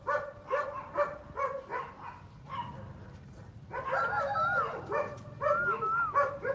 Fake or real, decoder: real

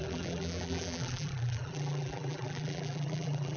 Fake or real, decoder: fake, vocoder, BigVGAN v2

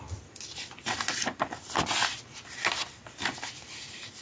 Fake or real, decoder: real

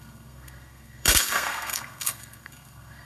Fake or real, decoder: fake, codec, SNAC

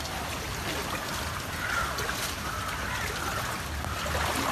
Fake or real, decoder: real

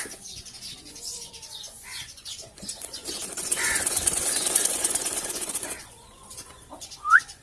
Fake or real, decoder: fake, vocoder, Vocos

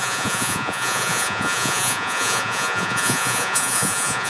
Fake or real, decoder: fake, vocoder, Vocos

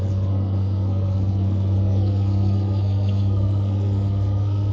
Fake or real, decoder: fake, codec, SNAC